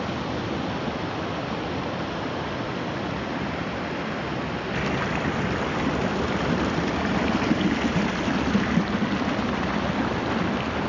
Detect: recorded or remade recorded